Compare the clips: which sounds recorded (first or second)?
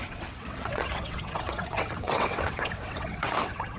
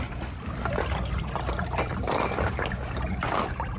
second